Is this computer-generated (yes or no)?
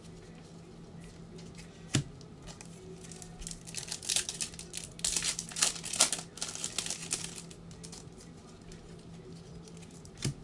no